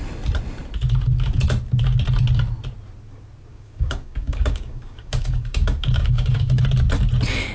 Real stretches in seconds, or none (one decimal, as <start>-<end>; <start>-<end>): 0.0-3.5; 6.6-7.5

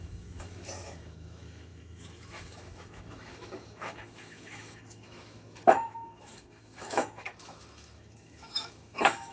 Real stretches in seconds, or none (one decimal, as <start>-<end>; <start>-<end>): none

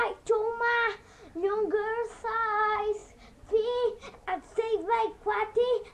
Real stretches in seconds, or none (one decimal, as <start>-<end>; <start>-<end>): 0.0-5.9